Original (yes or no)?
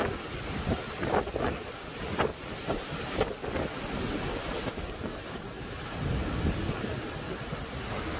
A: yes